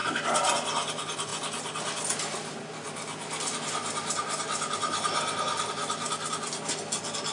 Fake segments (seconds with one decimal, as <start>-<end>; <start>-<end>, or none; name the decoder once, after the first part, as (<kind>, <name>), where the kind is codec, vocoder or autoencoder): none